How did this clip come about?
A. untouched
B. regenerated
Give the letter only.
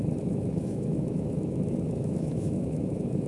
B